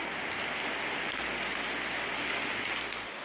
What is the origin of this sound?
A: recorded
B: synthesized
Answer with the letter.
A